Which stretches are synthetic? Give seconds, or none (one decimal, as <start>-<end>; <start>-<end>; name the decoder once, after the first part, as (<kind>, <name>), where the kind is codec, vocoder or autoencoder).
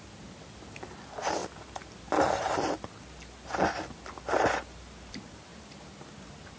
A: none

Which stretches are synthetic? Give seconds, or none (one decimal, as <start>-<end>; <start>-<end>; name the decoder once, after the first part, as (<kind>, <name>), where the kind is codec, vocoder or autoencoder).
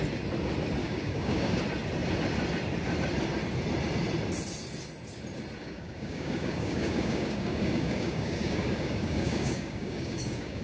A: 0.8-1.6 (codec, DAC); 5.6-10.6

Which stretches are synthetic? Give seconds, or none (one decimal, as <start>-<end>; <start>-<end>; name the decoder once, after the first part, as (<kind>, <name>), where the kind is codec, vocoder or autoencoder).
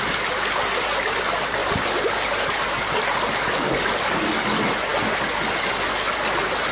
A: none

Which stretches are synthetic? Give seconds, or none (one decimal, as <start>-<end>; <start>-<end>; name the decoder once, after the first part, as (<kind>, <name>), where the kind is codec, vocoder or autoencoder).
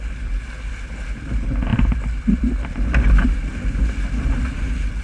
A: none